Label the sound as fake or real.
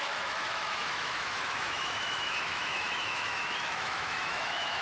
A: fake